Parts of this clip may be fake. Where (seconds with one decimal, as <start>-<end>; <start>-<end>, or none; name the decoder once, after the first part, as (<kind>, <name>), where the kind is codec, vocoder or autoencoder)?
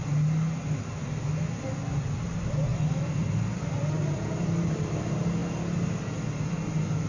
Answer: 2.7-5.0 (vocoder, BigVGAN v2)